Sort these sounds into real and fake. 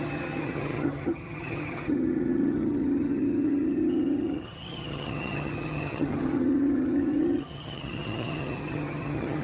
fake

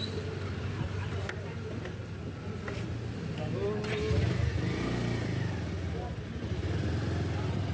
real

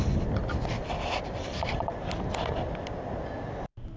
real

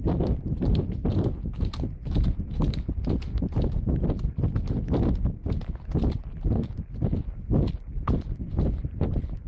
real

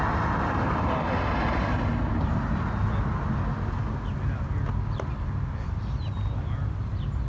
real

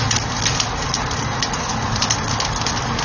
real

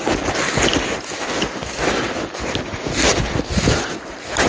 real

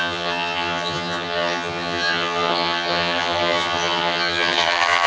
fake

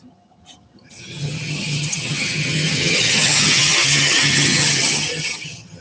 fake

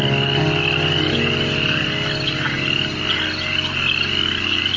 real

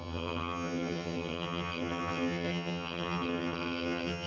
fake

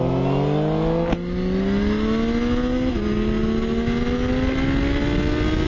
real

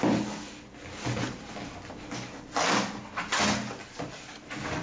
real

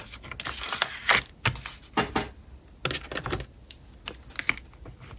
real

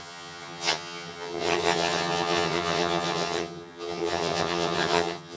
fake